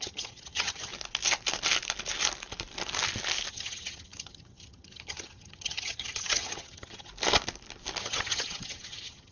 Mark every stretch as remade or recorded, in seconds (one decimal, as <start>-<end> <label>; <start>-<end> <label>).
0.0-0.9 remade; 0.9-3.5 recorded; 3.5-7.1 remade; 7.1-8.0 recorded; 8.0-9.3 remade